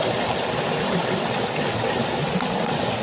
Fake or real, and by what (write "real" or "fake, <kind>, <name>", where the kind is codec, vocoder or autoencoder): real